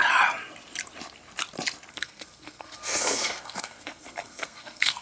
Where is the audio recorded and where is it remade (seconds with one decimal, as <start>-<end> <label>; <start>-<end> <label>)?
0.0-1.9 recorded; 1.9-5.0 remade